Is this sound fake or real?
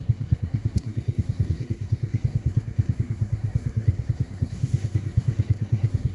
fake